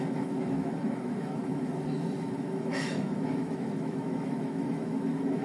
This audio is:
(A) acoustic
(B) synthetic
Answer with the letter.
B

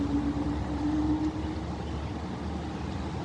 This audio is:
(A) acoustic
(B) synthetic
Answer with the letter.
A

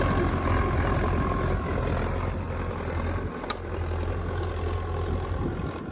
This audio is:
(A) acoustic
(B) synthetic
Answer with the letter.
A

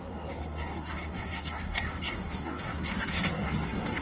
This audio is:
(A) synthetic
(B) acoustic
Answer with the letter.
A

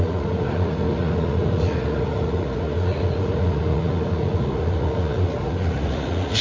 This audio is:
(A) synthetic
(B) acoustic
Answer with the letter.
A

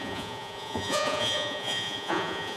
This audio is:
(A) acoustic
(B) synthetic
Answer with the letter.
B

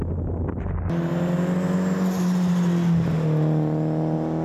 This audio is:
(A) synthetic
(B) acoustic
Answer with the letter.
B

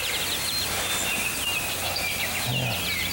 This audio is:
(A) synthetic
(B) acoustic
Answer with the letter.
B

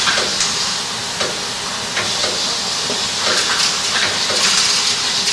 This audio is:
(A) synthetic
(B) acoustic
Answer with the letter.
B